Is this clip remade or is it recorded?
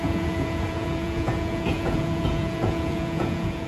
remade